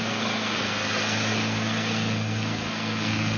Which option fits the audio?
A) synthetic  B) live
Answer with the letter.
A